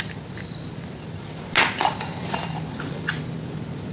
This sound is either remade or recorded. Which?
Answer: recorded